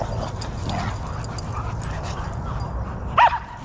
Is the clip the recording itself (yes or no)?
yes